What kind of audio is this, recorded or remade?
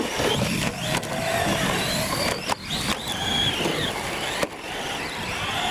recorded